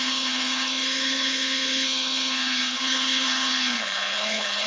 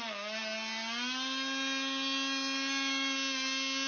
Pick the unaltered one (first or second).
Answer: second